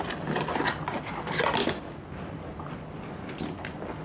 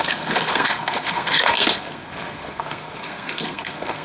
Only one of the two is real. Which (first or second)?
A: first